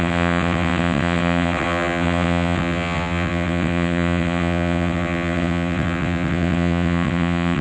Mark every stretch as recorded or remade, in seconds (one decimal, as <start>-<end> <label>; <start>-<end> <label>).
0.0-7.6 remade